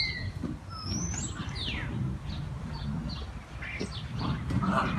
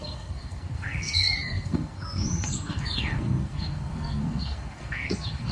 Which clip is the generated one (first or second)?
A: second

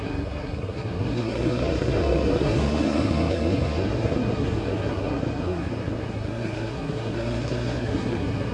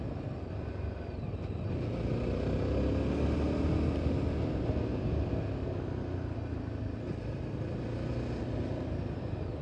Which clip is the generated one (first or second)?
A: first